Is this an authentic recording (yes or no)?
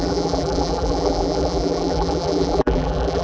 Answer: no